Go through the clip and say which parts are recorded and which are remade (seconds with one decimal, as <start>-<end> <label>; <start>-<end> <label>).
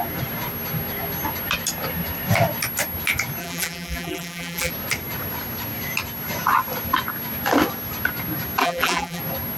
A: 0.0-3.4 recorded; 3.4-4.7 remade; 4.7-8.6 recorded; 8.6-9.2 remade; 9.2-9.6 recorded